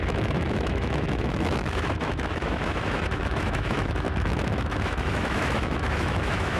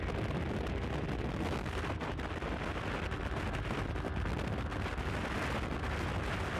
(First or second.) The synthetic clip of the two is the first